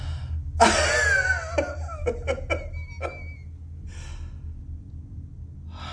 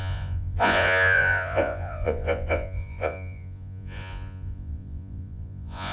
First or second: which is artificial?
second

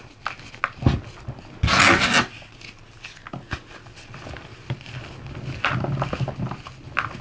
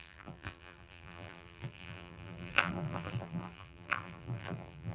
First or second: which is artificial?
second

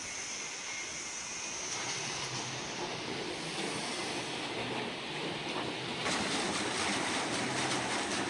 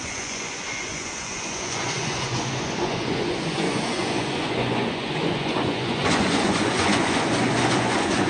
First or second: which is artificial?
second